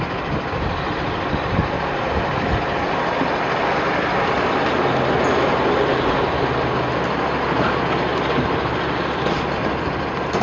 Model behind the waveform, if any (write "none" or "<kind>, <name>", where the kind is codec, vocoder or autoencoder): none